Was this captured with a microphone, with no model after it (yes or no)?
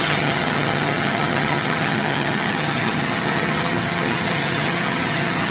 no